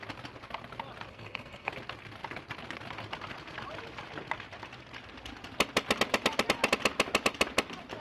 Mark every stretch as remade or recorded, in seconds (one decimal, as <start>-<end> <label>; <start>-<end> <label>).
0.0-1.1 recorded; 1.1-1.7 remade; 1.7-8.0 recorded